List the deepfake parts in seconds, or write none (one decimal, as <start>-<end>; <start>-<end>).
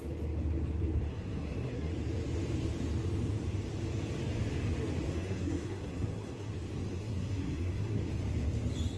1.1-1.9; 5.1-6.5; 6.9-8.0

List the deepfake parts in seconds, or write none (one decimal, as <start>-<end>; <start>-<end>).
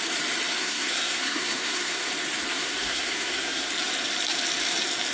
0.6-2.1; 2.5-3.7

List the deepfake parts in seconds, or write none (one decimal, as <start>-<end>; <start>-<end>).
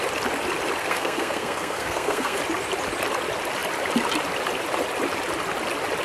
0.8-2.4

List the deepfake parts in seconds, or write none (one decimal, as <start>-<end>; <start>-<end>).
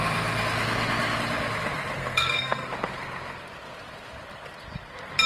2.0-2.7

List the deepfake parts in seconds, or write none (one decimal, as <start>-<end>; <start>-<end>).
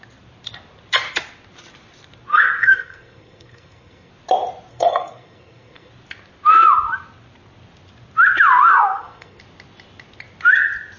2.3-4.1; 4.7-5.9; 8.7-9.4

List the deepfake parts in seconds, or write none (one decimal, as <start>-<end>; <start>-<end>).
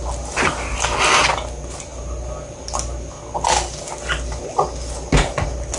none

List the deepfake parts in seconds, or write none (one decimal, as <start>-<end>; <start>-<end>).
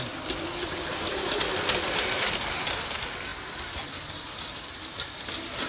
none